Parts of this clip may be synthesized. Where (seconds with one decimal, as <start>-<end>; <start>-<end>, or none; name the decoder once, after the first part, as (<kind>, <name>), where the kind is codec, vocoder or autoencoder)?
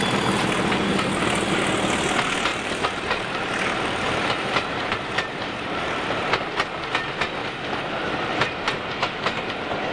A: 2.5-6.3 (vocoder, BigVGAN v2); 7.4-9.1